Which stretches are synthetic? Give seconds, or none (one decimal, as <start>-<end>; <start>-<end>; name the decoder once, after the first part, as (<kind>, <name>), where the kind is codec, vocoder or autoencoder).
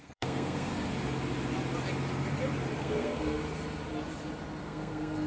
0.0-0.7 (codec, SNAC); 2.8-3.4; 4.6-5.3